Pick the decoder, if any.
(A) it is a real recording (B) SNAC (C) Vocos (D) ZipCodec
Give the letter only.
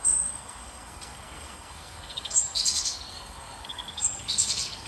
B